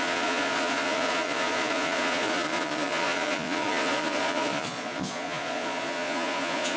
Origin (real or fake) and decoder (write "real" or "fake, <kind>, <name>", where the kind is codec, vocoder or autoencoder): fake, vocoder, Vocos